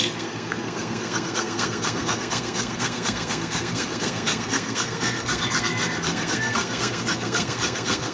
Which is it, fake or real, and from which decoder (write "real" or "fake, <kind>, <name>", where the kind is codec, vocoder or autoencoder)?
fake, codec, SNAC